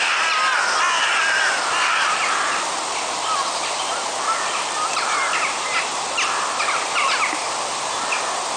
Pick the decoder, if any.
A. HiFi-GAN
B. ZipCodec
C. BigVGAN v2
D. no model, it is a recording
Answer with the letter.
D